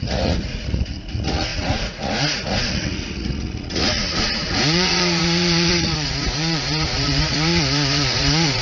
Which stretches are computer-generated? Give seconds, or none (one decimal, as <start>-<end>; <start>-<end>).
0.0-8.6